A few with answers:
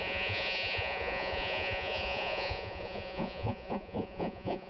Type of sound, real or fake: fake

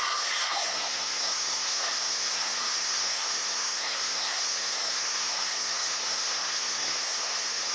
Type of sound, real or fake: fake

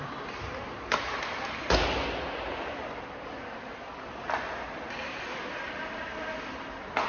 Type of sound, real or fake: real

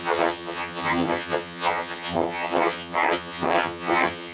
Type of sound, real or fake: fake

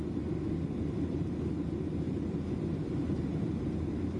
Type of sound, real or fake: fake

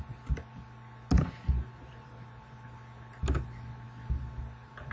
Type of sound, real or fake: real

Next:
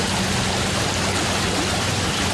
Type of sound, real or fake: real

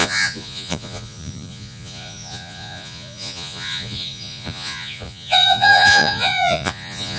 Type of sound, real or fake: fake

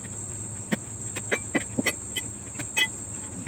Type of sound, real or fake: real